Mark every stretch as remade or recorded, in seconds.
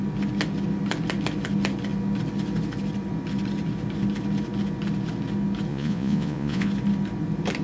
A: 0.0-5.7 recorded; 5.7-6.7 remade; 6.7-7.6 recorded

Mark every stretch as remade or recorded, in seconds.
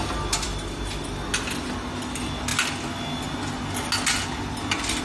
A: 0.0-5.0 recorded